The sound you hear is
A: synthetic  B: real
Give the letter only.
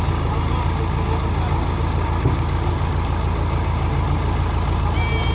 B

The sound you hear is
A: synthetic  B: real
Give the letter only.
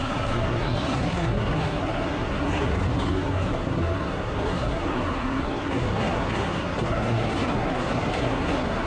A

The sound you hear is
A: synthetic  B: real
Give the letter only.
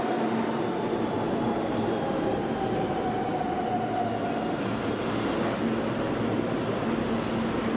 B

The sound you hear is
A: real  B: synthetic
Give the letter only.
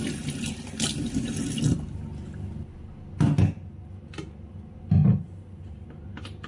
A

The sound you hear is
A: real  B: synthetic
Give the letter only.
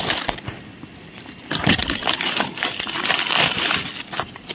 A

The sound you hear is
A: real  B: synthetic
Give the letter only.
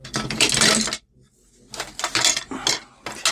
A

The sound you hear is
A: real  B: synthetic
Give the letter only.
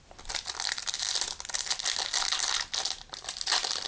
A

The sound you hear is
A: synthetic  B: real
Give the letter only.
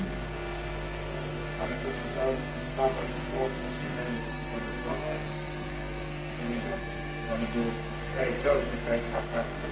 A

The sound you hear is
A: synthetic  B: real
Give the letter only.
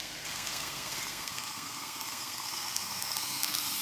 A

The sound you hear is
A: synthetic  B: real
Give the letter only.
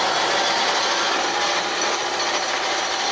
B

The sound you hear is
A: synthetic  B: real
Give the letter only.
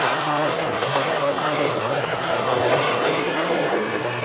A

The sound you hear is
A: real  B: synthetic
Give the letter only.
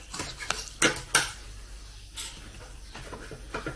A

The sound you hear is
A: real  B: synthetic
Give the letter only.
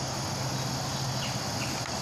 A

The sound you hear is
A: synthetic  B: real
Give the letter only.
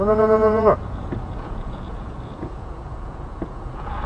A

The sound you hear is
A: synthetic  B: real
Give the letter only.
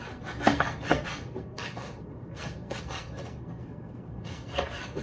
A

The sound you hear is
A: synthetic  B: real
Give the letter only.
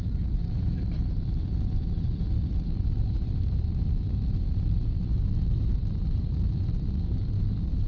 B